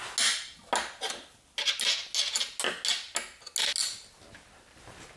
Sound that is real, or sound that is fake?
real